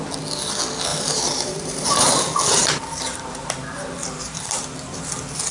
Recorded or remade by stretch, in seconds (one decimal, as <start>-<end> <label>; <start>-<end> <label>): 0.0-0.9 recorded; 0.9-3.5 remade; 3.5-4.0 recorded; 4.0-5.1 remade; 5.1-5.5 recorded